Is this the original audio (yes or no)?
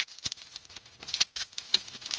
yes